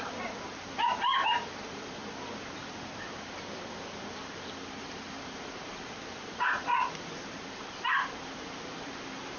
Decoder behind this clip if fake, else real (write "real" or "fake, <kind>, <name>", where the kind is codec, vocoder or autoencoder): fake, vocoder, BigVGAN v2